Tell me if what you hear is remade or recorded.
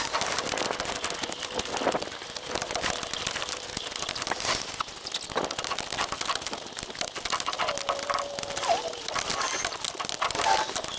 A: recorded